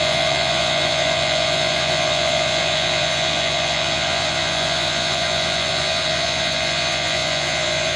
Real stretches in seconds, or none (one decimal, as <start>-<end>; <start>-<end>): none